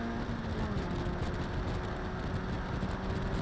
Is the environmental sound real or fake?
real